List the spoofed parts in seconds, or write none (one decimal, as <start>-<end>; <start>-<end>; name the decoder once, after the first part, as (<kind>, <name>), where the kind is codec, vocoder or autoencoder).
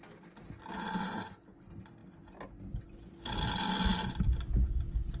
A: none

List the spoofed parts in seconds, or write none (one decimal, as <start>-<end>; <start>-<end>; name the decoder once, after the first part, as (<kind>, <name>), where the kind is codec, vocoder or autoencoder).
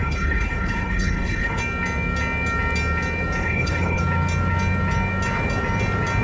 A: 0.0-1.6 (codec, HILCodec); 3.4-4.0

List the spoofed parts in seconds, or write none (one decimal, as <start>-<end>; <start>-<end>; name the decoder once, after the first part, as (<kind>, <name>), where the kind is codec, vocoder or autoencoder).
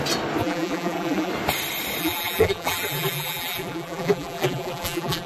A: 0.4-1.3 (vocoder, BigVGAN v2); 2.0-5.3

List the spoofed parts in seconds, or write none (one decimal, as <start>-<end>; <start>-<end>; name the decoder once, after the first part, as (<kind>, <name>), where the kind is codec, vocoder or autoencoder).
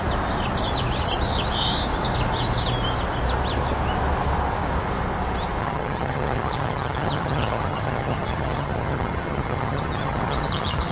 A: 5.6-10.9 (vocoder, HiFi-GAN)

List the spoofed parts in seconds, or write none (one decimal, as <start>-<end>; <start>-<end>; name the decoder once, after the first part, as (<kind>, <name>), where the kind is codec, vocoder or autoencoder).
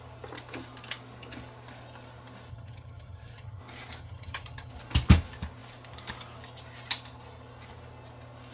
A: 2.5-3.6 (vocoder, HiFi-GAN); 4.0-4.7